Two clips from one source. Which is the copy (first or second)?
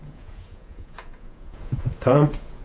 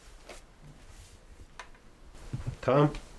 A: first